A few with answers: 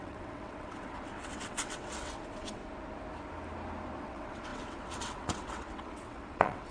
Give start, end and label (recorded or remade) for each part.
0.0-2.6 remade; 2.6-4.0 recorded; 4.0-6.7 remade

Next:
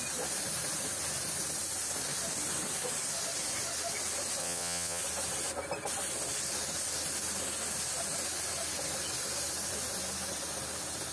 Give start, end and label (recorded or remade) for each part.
0.0-4.4 recorded; 4.4-5.0 remade; 5.0-11.1 recorded